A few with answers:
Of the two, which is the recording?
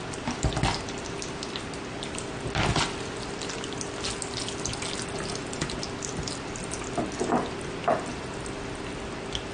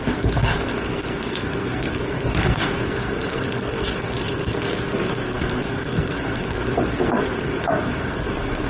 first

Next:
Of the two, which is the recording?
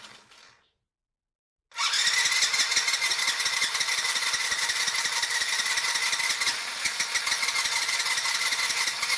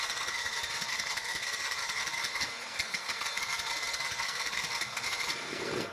first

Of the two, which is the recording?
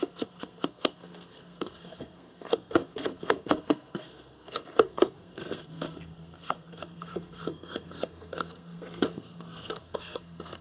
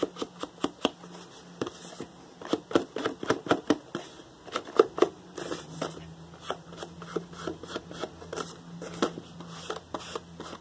second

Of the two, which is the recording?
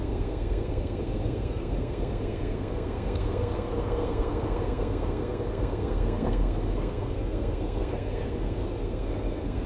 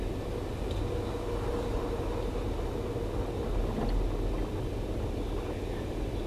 second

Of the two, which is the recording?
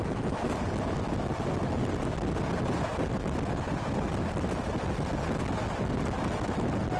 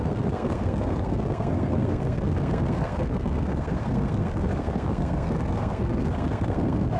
first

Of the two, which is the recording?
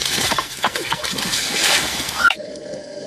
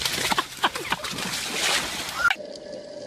second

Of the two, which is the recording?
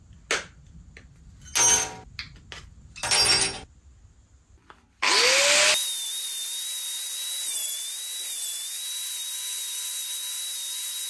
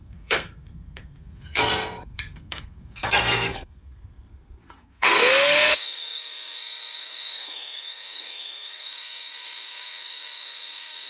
first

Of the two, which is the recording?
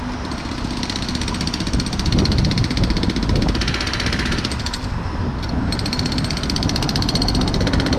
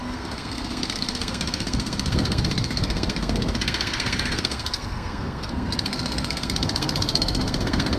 first